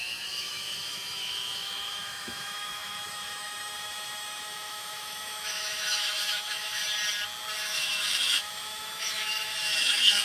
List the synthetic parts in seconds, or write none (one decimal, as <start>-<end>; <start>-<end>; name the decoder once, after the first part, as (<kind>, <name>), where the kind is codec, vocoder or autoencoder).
0.0-6.8 (autoencoder, DAC-VAE); 7.6-10.2